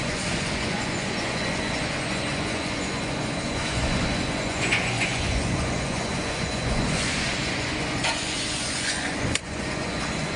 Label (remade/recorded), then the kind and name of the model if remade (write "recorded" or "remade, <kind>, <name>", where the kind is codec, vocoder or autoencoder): remade, vocoder, Vocos